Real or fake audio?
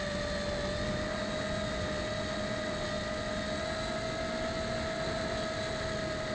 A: real